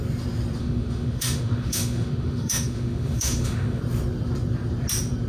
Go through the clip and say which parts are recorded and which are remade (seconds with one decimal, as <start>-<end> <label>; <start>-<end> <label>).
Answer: 0.0-0.6 recorded; 0.6-3.8 remade; 3.8-5.3 recorded